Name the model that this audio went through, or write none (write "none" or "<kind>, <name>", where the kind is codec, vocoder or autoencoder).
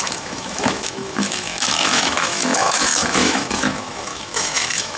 autoencoder, DAC-VAE